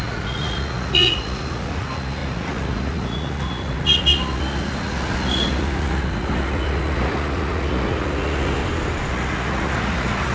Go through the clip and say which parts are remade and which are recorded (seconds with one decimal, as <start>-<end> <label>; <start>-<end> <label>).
0.0-8.6 remade; 8.6-9.1 recorded; 9.1-10.3 remade